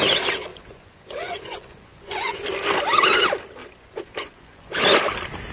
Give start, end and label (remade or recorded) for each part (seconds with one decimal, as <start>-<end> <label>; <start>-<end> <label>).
0.0-0.5 recorded; 0.5-2.3 remade; 2.3-3.6 recorded; 3.6-4.7 remade; 4.7-5.5 recorded